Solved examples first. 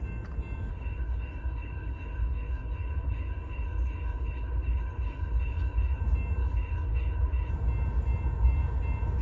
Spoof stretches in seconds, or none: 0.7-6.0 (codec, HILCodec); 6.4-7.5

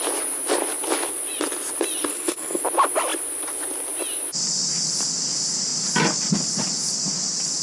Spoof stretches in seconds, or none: 2.1-2.6 (codec, HILCodec)